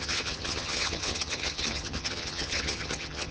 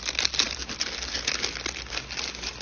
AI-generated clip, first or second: first